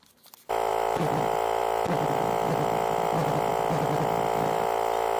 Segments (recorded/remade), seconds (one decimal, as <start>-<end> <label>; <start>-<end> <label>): 0.0-0.7 recorded; 0.7-1.6 remade; 1.6-5.2 recorded